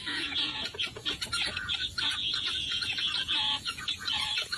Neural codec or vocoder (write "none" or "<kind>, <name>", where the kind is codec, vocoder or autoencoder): vocoder, Vocos